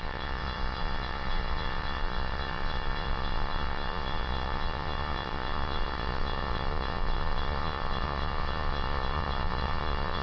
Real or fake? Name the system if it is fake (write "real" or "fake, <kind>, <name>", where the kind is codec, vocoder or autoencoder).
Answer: fake, vocoder, Vocos